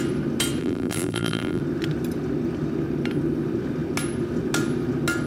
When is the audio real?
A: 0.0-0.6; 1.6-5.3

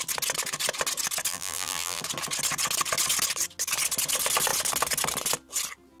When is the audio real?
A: 0.0-1.3; 2.0-6.0

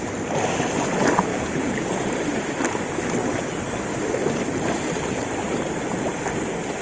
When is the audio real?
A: 0.0-1.3; 2.0-3.2; 3.8-6.8

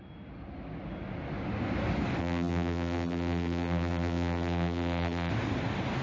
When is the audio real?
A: 0.0-2.2; 5.3-6.0